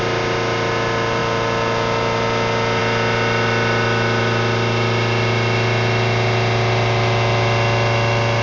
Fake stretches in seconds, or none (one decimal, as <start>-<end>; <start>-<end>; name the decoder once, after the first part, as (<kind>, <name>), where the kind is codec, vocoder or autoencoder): none